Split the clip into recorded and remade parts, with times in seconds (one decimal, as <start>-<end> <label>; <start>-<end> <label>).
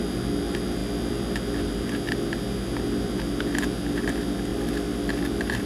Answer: 0.0-5.7 recorded